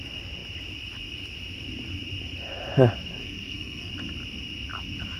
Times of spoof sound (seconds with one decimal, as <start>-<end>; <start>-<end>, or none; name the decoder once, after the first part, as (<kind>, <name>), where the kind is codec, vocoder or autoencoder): 3.2-3.9 (codec, SNAC)